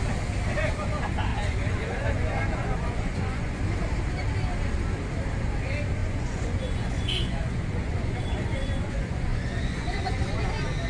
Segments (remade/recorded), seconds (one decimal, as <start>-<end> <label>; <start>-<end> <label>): 0.0-1.3 recorded; 1.3-3.6 remade; 3.6-6.0 recorded; 6.0-10.5 remade; 10.5-10.9 recorded

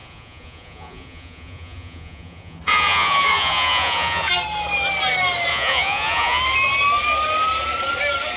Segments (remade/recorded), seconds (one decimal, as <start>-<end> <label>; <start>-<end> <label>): 0.0-4.3 remade; 4.3-5.5 recorded; 5.5-6.4 remade; 6.4-8.4 recorded

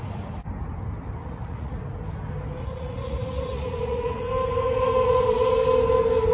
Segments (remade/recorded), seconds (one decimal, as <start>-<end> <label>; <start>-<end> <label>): 0.0-1.2 recorded; 1.2-1.8 remade; 1.8-2.6 recorded; 2.6-4.2 remade; 4.2-6.3 recorded

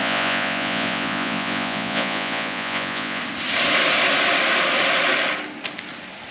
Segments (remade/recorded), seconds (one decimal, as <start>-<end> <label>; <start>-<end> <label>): 0.0-3.2 remade; 3.2-6.3 recorded